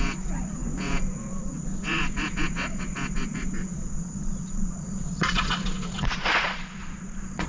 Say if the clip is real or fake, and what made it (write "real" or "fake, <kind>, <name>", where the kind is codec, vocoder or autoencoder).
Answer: fake, vocoder, Vocos